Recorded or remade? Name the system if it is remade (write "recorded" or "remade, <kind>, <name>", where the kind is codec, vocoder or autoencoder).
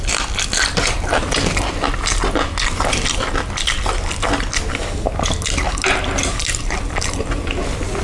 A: recorded